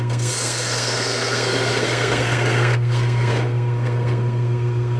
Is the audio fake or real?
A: fake